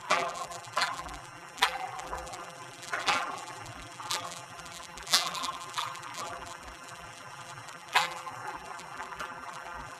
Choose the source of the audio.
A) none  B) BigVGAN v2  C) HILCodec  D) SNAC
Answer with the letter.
B